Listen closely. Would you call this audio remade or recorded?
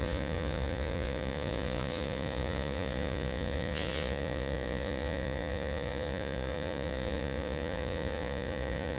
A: remade